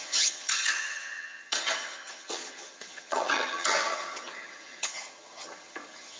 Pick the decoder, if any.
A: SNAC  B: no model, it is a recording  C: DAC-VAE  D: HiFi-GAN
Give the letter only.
D